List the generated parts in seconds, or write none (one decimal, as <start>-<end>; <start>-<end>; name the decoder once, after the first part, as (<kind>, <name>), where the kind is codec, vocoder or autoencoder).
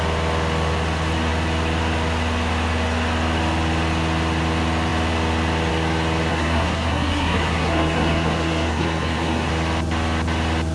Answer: 6.3-9.5 (codec, SNAC)